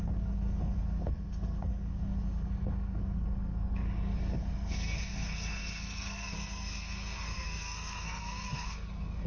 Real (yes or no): no